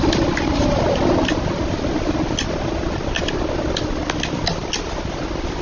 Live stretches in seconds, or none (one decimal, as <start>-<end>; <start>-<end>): 0.0-5.6